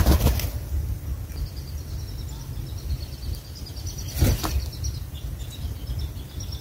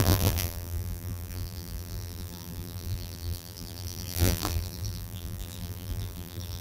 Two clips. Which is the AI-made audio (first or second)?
second